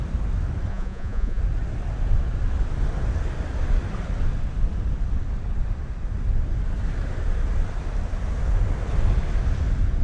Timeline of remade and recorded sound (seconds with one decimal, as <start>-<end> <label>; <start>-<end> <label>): 0.0-0.7 recorded; 0.7-1.4 remade; 1.4-10.0 recorded